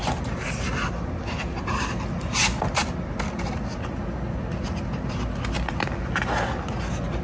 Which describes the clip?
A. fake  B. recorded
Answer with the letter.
B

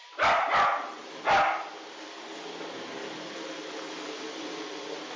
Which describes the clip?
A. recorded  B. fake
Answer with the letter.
A